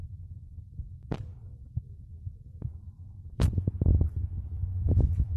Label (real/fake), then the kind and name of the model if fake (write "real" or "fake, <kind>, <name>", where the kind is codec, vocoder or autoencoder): fake, vocoder, BigVGAN v2